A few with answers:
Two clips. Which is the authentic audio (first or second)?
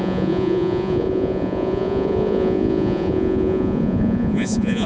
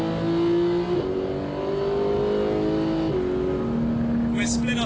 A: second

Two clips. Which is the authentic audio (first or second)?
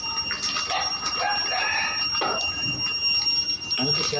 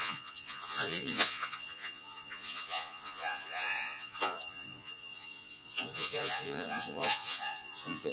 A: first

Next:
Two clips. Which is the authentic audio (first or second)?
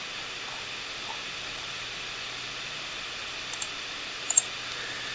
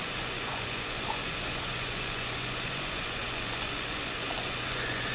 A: first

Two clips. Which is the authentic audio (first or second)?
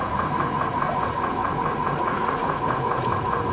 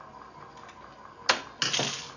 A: second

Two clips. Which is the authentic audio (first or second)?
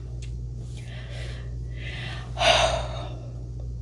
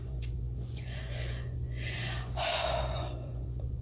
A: first